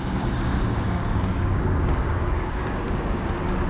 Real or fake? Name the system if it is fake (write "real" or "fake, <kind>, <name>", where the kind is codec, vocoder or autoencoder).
fake, codec, DAC